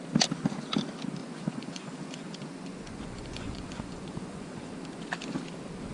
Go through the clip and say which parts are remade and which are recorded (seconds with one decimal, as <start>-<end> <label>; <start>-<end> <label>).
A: 0.0-1.2 recorded; 1.2-4.7 remade; 4.7-5.9 recorded